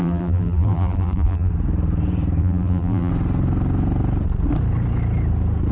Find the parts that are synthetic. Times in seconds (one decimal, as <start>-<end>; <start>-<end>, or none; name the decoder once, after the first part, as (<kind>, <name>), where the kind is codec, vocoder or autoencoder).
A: 0.0-1.5 (vocoder, BigVGAN v2); 2.4-3.1